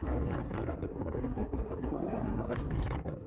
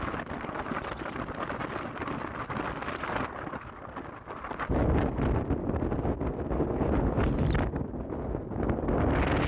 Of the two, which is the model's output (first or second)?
first